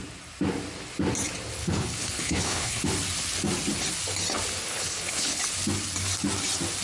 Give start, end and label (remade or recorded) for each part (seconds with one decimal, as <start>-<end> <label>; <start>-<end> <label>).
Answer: 0.0-1.6 recorded; 1.6-2.8 remade; 2.8-4.7 recorded; 4.7-5.4 remade; 5.4-6.8 recorded